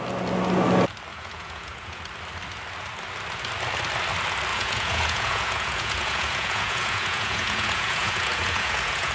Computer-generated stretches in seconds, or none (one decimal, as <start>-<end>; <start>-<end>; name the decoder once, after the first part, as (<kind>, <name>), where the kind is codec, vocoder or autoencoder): 1.1-2.0 (vocoder, Vocos); 4.5-9.1